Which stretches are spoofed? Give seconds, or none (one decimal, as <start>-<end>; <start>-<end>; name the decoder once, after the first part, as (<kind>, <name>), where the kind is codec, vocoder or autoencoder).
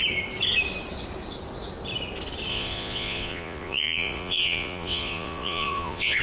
2.5-6.2 (vocoder, Vocos)